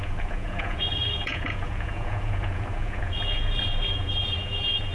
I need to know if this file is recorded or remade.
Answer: remade